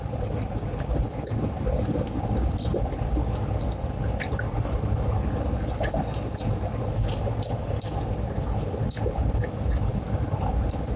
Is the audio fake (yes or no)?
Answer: no